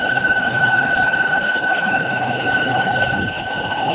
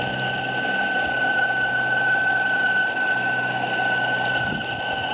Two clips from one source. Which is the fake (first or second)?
first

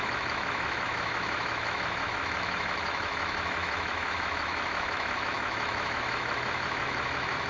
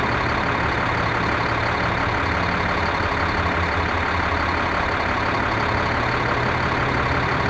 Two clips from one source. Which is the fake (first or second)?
first